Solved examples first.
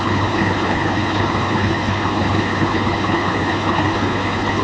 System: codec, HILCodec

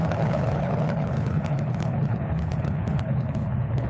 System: codec, HILCodec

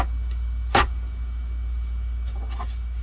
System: none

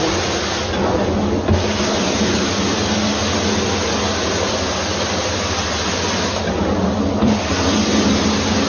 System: none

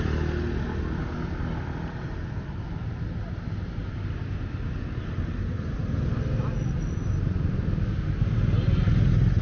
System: none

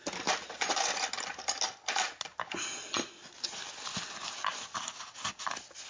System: none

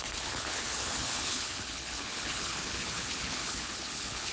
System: codec, HILCodec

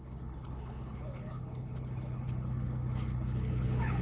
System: codec, HILCodec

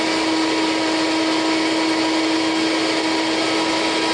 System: none